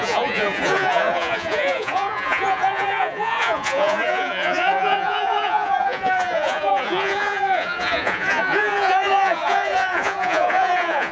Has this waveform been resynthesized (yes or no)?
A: yes